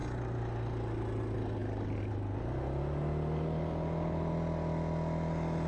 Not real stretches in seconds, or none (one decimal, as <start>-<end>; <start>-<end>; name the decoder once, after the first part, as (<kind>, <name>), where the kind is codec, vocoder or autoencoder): none